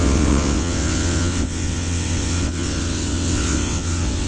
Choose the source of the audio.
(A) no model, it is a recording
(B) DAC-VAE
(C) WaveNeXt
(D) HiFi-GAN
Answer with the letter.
C